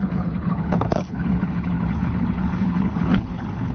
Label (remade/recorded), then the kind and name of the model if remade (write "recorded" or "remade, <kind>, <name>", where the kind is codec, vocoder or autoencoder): remade, codec, HILCodec